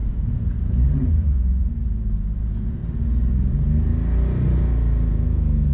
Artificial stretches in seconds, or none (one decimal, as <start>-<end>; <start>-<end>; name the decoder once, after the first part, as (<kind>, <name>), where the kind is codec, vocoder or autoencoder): 0.0-2.8 (vocoder, Vocos); 3.5-3.9; 5.1-5.7